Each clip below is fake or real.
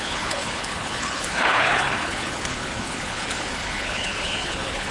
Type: fake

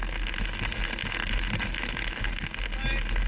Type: real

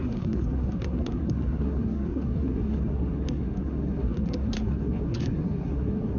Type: fake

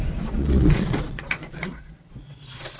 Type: fake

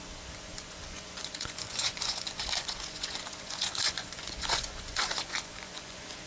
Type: fake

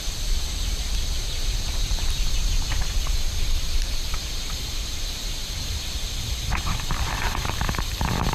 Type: fake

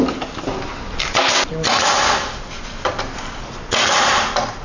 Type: real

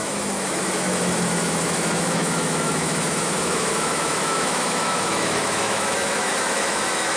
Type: fake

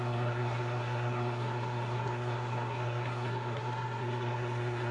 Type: fake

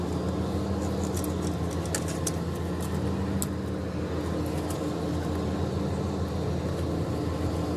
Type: real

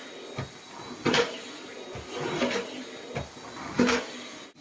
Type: real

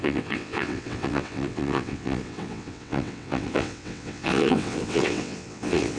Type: fake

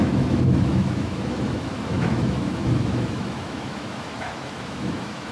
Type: fake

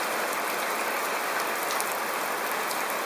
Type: real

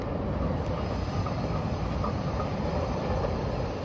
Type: real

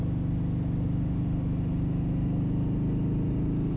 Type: real